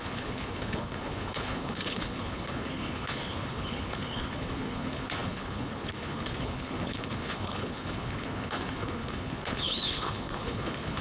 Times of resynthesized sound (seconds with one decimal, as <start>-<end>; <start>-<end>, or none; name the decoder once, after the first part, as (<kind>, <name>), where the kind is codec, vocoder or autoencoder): 0.0-11.0 (codec, HILCodec)